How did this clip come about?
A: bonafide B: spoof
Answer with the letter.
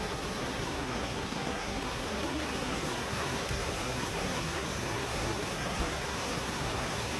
B